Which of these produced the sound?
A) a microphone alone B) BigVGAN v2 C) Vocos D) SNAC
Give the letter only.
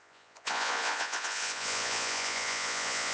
C